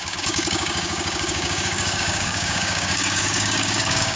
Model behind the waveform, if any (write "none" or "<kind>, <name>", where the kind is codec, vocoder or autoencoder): codec, DAC